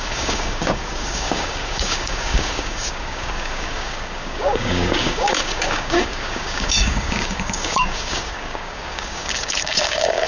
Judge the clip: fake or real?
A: fake